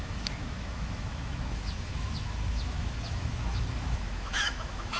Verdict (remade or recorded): remade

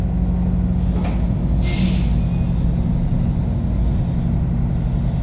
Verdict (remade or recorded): recorded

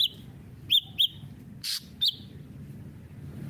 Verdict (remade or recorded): recorded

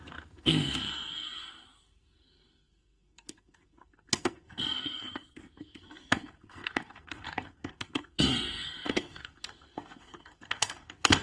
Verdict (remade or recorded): remade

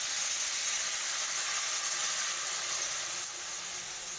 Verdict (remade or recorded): recorded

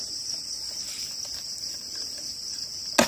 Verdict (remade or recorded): recorded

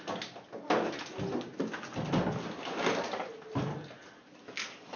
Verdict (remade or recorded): recorded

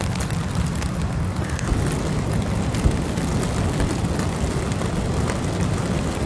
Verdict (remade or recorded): recorded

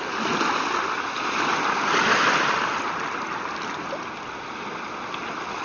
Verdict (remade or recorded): recorded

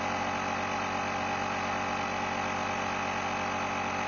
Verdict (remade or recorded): recorded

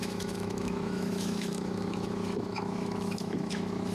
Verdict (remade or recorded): remade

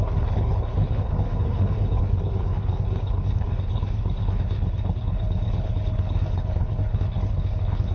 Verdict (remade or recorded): remade